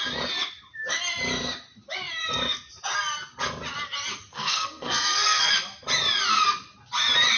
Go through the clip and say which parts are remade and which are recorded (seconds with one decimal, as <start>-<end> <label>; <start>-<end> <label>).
0.0-4.3 recorded; 4.3-5.5 remade; 5.5-7.4 recorded